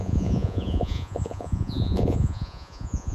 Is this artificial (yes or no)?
yes